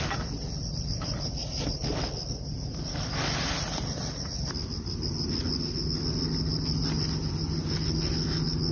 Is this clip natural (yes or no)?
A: yes